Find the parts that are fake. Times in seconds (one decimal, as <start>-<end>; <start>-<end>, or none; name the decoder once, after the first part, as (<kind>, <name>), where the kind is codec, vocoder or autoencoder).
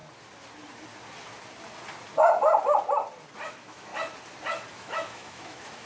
3.5-3.9 (autoencoder, DAC-VAE); 4.7-5.9